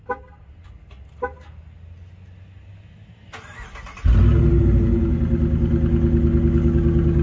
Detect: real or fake real